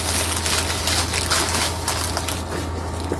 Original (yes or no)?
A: yes